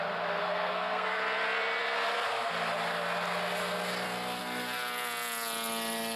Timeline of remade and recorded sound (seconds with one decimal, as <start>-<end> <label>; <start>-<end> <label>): 0.0-0.4 recorded; 0.4-1.2 remade; 1.2-6.2 recorded

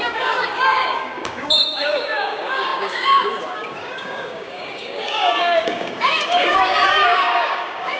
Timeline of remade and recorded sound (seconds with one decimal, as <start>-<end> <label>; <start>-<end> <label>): 0.0-8.0 remade